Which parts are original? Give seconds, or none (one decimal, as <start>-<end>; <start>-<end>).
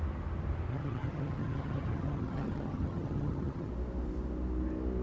0.0-0.7; 3.7-5.0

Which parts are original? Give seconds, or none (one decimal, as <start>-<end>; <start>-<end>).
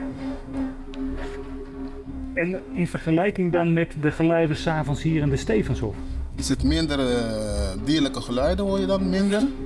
0.8-2.1; 4.6-6.0; 6.6-9.2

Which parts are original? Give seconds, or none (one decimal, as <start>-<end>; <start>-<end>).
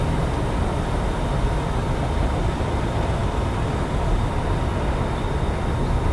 0.0-1.8; 2.7-3.2; 5.6-6.1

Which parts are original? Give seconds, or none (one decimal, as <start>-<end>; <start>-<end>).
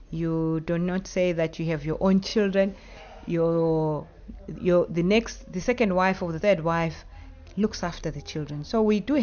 0.0-9.2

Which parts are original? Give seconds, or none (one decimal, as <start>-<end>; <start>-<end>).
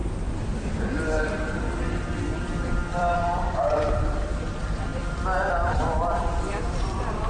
0.0-2.4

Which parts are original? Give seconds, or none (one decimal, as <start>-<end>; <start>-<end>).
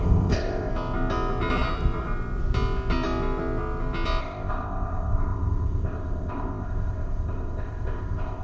0.7-4.2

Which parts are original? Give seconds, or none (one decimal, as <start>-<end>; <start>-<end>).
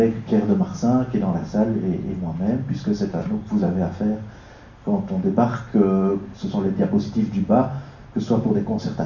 0.0-9.1